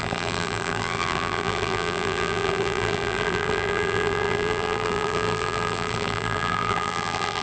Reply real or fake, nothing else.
fake